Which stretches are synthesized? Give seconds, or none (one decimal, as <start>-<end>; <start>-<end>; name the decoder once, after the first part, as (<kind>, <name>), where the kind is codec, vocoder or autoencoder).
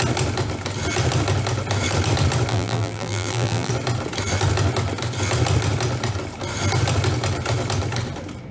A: 2.5-3.7 (vocoder, BigVGAN v2)